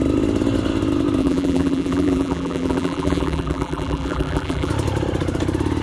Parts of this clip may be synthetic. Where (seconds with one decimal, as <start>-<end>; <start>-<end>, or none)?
1.2-4.7